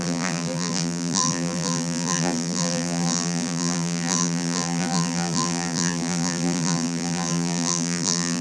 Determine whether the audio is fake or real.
fake